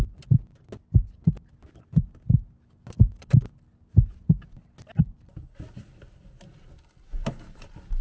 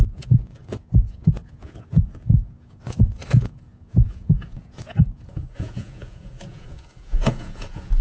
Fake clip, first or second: second